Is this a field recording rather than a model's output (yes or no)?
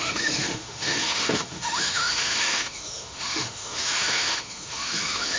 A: no